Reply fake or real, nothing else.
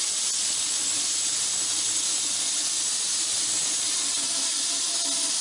real